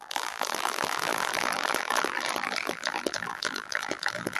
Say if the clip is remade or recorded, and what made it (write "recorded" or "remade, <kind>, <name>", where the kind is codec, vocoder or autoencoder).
remade, vocoder, BigVGAN v2